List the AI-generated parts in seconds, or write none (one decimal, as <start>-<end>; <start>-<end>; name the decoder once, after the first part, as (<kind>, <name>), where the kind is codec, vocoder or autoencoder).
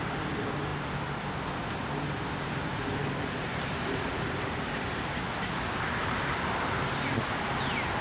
none